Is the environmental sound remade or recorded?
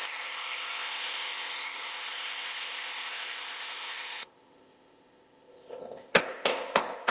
remade